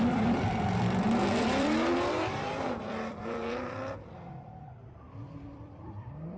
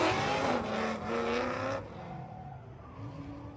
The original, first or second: second